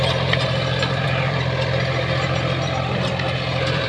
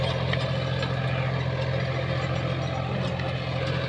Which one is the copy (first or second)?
first